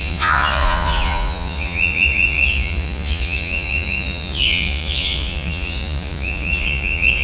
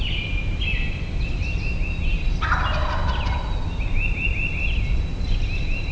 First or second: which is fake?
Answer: first